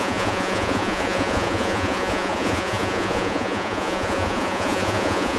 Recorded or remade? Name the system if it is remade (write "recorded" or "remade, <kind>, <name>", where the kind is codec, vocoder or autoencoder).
remade, vocoder, Vocos